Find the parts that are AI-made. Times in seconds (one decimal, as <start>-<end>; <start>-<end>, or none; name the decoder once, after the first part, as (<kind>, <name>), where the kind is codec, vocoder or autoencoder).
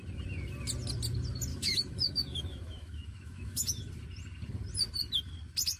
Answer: 1.5-3.9 (autoencoder, DAC-VAE)